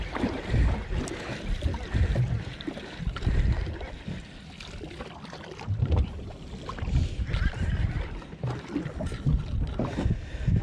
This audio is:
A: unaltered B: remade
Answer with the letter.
A